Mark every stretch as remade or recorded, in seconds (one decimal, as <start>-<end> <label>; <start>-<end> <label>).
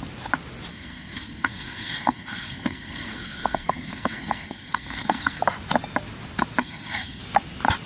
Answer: 0.0-0.7 recorded; 0.7-5.4 remade; 5.4-6.6 recorded; 6.6-7.2 remade; 7.2-7.9 recorded